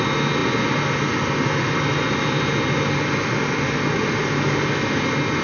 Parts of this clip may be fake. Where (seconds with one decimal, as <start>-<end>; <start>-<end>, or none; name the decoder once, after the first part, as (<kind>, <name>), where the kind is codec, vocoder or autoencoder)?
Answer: none